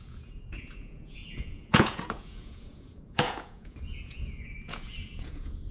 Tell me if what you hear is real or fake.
fake